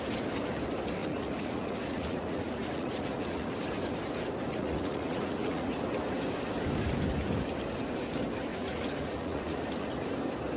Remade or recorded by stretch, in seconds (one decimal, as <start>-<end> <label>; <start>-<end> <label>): 0.0-1.0 recorded; 1.0-3.5 remade; 3.5-4.5 recorded; 4.5-5.7 remade; 5.7-8.5 recorded; 8.5-9.9 remade; 9.9-10.6 recorded